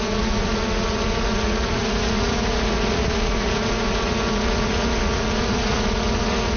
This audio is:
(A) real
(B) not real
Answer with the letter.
B